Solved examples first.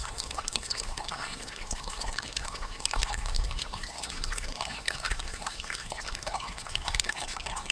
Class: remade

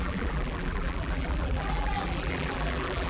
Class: remade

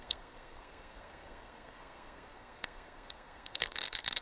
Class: remade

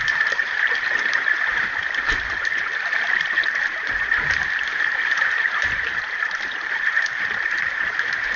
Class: remade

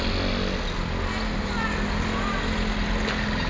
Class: recorded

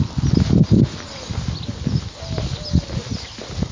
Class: recorded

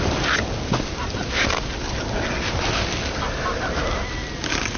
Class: recorded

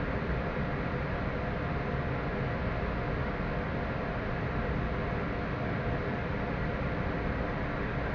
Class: recorded